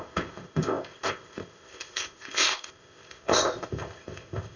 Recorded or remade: remade